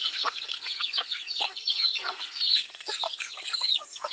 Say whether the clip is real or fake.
fake